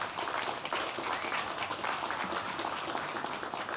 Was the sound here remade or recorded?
recorded